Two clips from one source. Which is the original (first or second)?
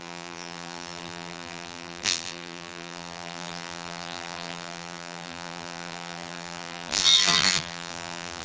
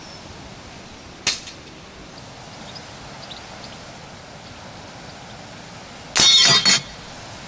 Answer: second